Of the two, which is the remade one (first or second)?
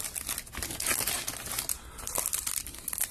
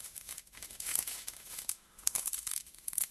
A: second